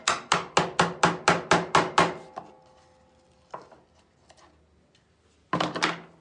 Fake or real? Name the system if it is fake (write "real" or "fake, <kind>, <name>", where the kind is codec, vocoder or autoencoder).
real